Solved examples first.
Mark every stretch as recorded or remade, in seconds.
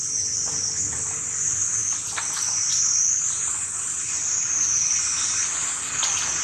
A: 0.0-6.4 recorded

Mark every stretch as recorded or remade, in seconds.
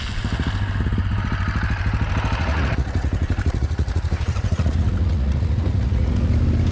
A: 0.0-2.4 recorded; 2.4-6.3 remade; 6.3-6.7 recorded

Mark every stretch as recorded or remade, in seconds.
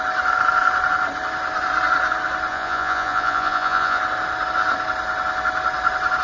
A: 0.0-2.5 recorded; 2.5-4.0 remade; 4.0-6.2 recorded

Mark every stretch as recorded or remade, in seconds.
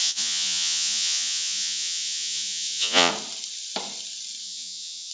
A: 0.0-3.1 remade; 3.1-4.4 recorded; 4.4-5.1 remade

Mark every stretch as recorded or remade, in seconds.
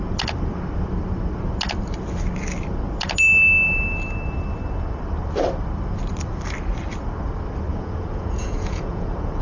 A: 0.0-7.7 recorded; 7.7-9.4 remade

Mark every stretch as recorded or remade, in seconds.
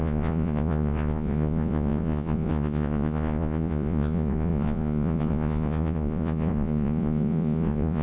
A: 0.0-8.0 remade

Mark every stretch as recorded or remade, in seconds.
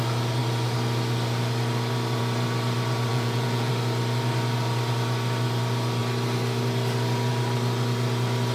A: 0.0-3.1 recorded; 3.1-3.7 remade; 3.7-8.5 recorded